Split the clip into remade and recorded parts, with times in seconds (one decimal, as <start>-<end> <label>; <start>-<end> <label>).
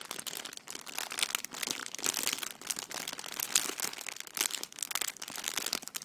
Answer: 0.0-1.8 remade; 1.8-5.4 recorded; 5.4-6.0 remade